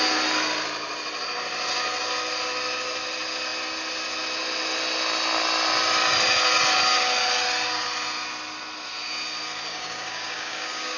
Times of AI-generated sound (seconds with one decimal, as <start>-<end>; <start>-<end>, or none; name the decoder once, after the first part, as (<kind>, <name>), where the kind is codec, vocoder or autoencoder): 9.7-11.0 (codec, DAC)